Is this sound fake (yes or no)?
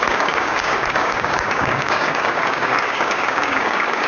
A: yes